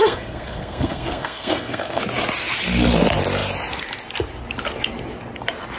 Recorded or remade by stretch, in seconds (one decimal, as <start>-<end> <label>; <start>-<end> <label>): 0.0-2.0 remade; 2.0-5.8 recorded